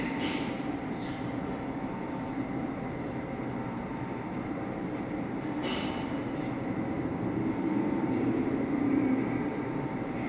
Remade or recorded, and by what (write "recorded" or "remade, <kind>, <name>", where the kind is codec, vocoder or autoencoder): remade, vocoder, BigVGAN v2